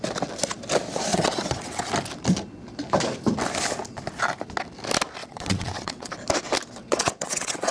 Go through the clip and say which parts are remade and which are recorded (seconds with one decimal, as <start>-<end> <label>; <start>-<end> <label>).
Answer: 0.0-1.1 recorded; 1.1-1.8 remade; 1.8-5.2 recorded; 5.2-6.1 remade; 6.1-6.8 recorded; 6.8-7.7 remade